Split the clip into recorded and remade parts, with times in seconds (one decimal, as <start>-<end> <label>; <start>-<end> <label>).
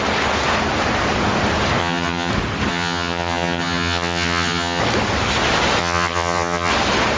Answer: 0.0-1.8 recorded; 1.8-2.3 remade; 2.3-2.7 recorded; 2.7-4.8 remade; 4.8-5.8 recorded; 5.8-6.7 remade; 6.7-7.2 recorded